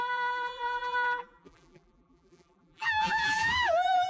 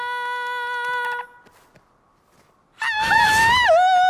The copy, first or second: first